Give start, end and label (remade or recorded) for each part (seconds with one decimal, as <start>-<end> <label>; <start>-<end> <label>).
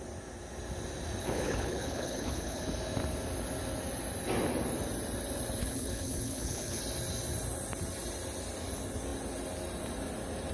0.0-1.2 recorded; 1.2-2.6 remade; 2.6-5.6 recorded; 5.6-6.8 remade; 6.8-10.5 recorded